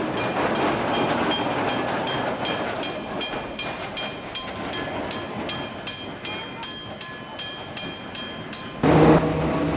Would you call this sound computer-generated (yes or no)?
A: no